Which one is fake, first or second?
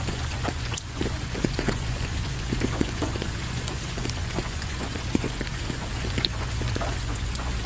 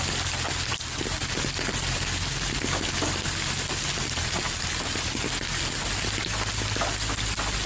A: first